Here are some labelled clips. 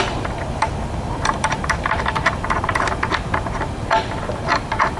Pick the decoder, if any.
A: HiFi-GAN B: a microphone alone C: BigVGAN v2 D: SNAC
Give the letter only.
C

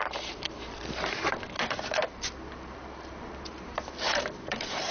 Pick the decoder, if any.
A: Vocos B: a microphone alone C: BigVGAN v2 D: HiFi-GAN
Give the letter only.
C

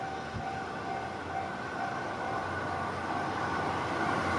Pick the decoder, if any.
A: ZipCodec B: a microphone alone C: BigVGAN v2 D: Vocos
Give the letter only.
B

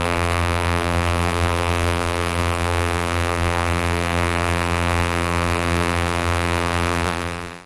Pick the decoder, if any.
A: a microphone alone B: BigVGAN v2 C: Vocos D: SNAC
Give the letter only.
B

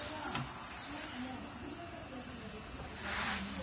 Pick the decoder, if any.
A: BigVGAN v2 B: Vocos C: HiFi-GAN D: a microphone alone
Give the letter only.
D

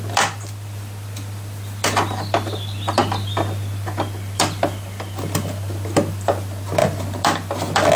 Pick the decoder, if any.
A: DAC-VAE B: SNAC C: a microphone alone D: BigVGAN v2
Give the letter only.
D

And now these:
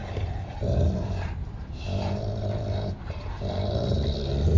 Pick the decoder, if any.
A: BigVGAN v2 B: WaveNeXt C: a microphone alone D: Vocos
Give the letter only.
A